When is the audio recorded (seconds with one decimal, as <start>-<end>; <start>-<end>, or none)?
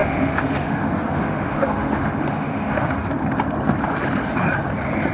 3.1-5.1